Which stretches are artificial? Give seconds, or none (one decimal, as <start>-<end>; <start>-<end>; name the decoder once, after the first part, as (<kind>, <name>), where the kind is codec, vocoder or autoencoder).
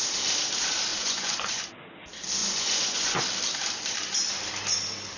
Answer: 0.9-1.6 (vocoder, Vocos); 2.4-3.2